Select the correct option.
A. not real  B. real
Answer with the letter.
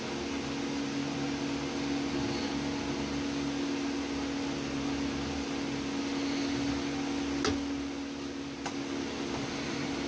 B